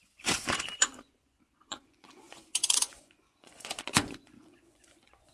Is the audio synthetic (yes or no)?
yes